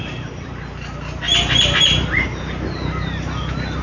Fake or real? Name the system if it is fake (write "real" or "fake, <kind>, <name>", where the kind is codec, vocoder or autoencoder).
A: real